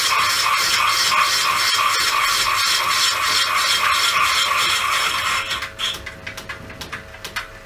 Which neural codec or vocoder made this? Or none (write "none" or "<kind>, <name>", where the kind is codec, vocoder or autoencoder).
none